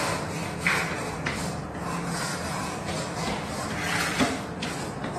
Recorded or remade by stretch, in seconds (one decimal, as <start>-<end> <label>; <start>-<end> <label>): 0.0-2.3 recorded; 2.3-2.9 remade; 2.9-5.2 recorded